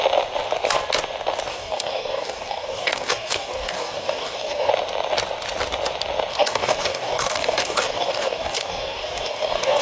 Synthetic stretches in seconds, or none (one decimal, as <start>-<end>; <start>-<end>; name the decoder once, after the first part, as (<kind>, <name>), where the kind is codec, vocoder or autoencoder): 1.5-4.7 (codec, DAC); 6.3-9.8